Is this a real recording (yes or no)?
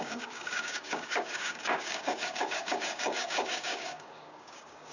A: no